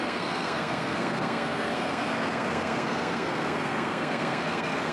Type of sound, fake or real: fake